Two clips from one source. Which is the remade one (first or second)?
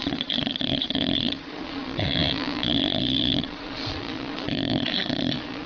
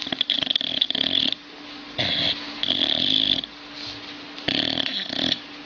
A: first